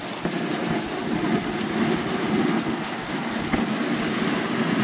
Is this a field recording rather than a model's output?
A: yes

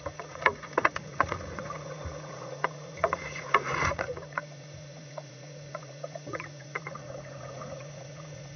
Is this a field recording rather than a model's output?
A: no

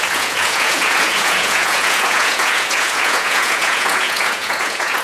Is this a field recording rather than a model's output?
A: no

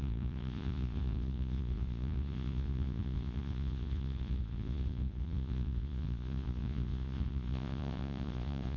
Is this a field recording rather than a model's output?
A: no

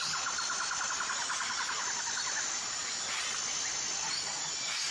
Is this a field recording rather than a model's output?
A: yes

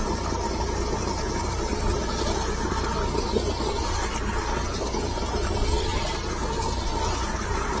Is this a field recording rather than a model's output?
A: yes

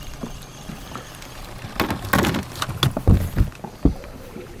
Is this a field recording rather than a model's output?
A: yes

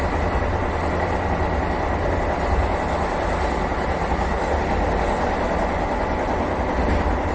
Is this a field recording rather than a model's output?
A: yes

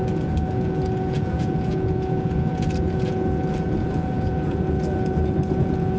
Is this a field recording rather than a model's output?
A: no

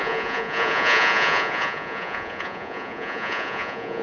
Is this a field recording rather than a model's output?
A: no